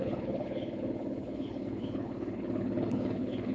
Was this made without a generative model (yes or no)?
no